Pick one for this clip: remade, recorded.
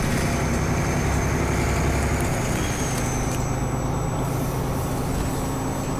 recorded